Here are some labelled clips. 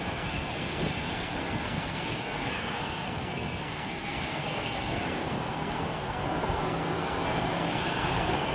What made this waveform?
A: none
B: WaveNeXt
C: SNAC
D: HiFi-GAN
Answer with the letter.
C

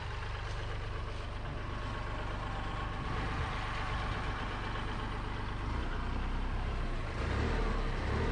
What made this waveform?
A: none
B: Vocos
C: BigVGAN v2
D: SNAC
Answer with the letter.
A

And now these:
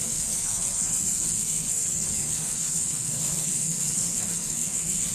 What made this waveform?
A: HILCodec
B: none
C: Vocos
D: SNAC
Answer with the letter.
D